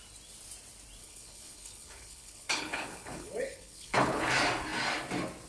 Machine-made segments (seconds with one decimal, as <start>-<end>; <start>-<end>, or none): 1.0-4.3